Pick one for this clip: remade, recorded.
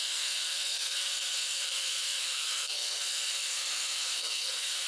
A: remade